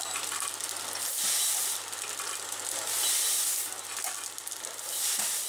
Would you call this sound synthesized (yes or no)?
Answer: no